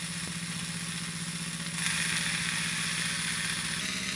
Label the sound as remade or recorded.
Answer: recorded